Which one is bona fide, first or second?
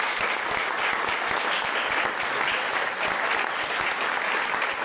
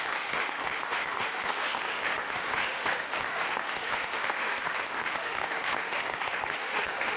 first